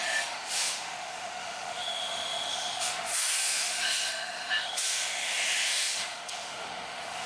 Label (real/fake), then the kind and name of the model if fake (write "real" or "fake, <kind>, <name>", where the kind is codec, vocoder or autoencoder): fake, autoencoder, DAC-VAE